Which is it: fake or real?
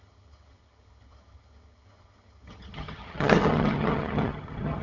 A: fake